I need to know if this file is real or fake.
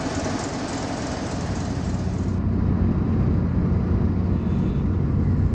real